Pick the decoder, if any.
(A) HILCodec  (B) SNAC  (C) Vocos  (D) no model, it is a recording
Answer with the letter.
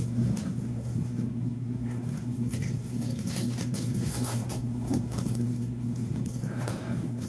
B